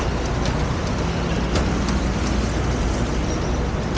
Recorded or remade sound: recorded